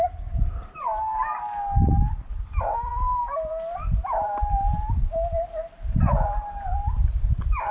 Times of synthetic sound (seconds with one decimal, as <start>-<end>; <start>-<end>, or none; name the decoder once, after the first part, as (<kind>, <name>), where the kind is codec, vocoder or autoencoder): none